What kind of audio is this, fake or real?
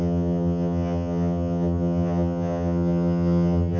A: fake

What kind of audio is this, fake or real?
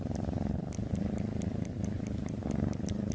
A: real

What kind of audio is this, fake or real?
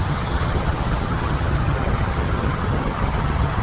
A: fake